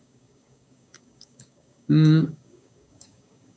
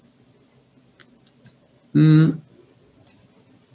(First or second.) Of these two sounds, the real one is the second